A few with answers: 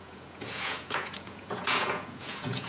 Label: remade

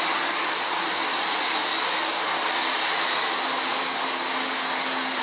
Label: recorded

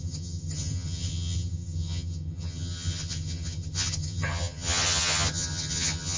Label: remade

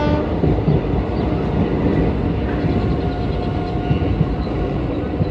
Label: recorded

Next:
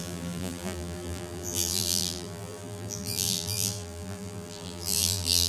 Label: remade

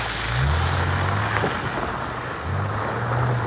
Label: recorded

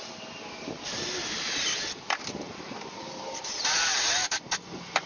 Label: remade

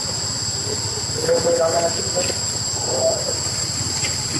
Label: recorded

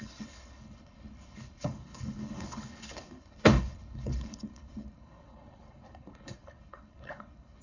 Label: remade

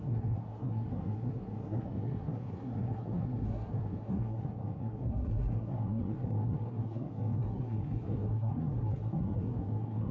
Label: remade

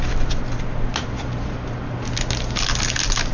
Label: recorded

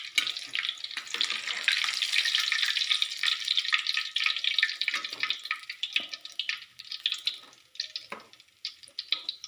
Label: recorded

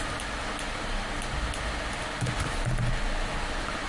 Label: recorded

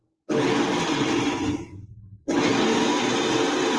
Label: recorded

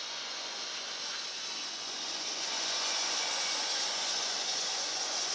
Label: remade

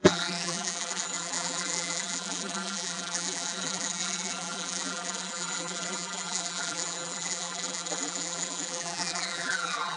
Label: remade